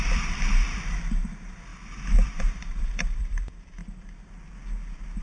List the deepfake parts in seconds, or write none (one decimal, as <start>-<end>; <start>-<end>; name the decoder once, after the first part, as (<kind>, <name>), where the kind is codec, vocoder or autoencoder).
0.0-3.8 (vocoder, BigVGAN v2)